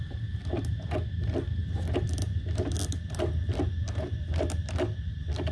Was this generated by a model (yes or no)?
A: no